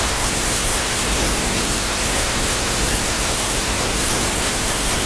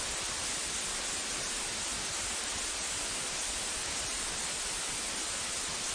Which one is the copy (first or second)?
first